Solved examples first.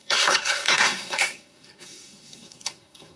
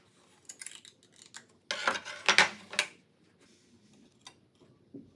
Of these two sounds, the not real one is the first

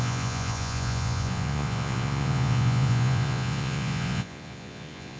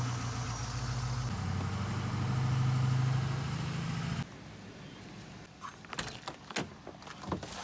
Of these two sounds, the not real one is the first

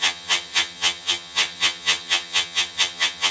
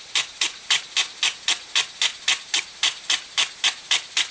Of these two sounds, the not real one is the first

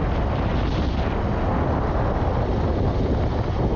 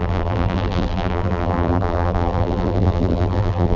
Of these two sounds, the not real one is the second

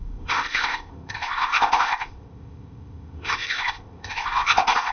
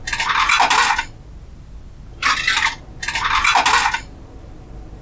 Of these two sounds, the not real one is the first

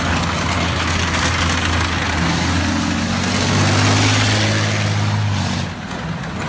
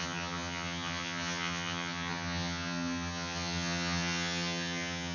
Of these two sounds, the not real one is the second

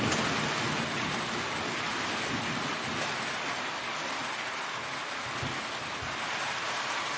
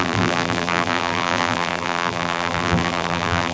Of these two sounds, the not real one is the second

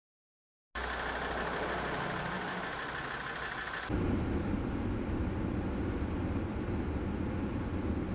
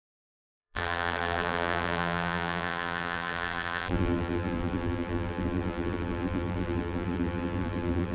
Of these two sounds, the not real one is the second